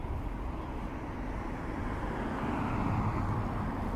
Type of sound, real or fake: real